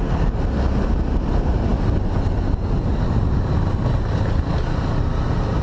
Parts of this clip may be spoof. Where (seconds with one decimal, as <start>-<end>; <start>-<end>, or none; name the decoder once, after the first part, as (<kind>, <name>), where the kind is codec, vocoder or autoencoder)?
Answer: none